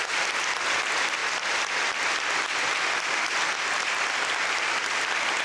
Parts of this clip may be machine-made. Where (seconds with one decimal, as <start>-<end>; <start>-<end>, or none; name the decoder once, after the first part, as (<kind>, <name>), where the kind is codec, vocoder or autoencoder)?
none